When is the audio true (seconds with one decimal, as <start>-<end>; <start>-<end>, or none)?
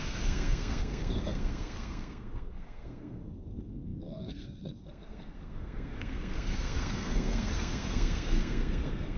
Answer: none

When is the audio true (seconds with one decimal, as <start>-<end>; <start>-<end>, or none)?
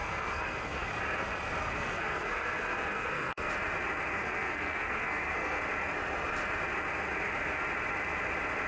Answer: 0.9-1.6; 3.5-4.1; 5.6-8.7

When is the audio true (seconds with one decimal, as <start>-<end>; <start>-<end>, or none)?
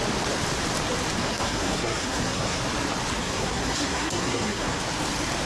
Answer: 0.0-1.2; 2.6-3.2; 4.8-5.5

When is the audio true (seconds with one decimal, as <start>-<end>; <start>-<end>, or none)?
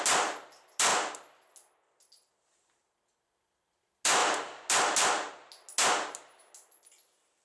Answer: 0.0-7.4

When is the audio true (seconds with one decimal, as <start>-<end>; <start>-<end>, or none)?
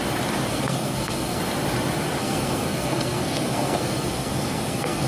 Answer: 0.0-0.5; 1.4-2.2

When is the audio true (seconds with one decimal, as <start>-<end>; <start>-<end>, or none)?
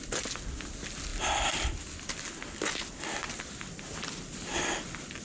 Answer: 0.0-5.2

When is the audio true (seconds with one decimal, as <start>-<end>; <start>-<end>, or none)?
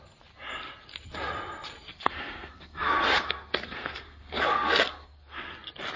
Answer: 0.0-1.9; 5.5-6.0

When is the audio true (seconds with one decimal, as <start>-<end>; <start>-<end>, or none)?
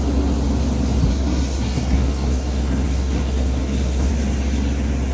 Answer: 0.0-1.1; 4.1-5.1